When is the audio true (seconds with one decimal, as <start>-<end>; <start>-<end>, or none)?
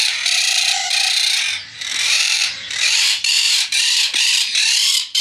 0.8-2.1; 3.8-4.3